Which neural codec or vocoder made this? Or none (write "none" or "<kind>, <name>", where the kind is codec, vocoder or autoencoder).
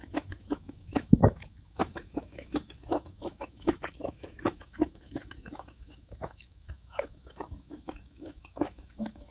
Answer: autoencoder, DAC-VAE